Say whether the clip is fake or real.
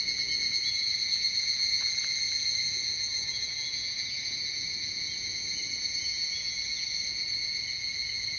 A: fake